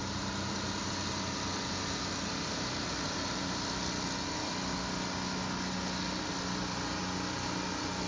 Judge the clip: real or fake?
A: real